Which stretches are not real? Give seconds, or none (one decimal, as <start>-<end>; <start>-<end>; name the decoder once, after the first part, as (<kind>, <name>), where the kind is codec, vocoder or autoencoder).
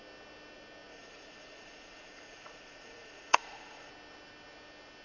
0.9-3.9 (vocoder, Vocos)